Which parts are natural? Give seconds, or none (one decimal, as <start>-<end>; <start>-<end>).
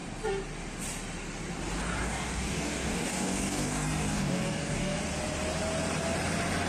0.0-2.0; 5.0-6.7